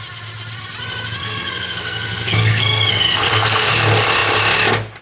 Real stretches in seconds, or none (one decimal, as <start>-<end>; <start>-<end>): 0.0-1.2; 3.7-5.0

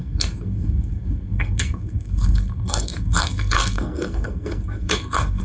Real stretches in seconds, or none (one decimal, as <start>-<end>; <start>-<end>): none

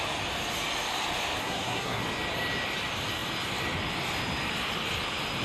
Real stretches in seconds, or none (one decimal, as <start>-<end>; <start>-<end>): 0.0-1.4; 2.0-5.4

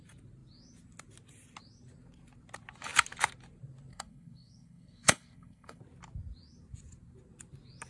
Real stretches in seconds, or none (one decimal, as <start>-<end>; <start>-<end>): 0.0-3.9; 5.8-7.9

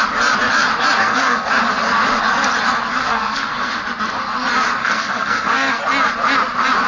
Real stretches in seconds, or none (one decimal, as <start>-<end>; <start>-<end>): 0.0-1.0; 1.5-3.0; 3.7-4.8; 5.8-6.9

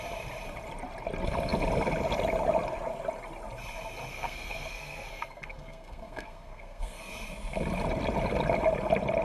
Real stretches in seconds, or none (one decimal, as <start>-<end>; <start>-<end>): 0.0-4.1; 7.1-9.2

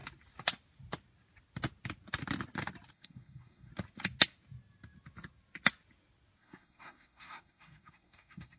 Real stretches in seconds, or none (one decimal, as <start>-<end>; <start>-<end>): 0.0-2.9; 3.7-6.4

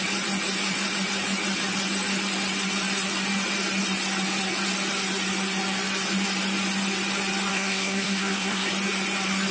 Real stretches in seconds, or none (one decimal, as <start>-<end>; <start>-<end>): 0.0-7.5; 8.7-9.5